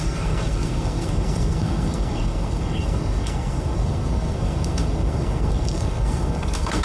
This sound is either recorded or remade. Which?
remade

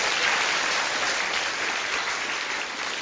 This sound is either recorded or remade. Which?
recorded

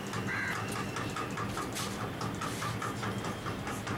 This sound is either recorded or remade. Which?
recorded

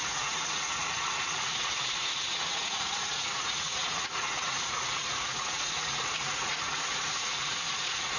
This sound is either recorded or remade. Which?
remade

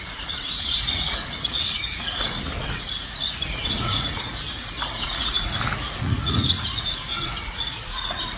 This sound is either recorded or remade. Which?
remade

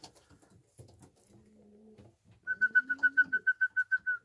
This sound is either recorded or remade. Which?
recorded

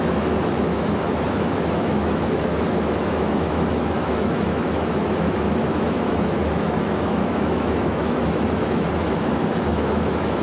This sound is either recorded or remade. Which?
remade